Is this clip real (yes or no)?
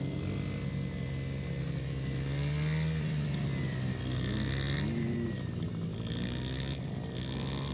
yes